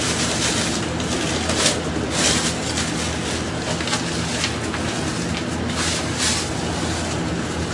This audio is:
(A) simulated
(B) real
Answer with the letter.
B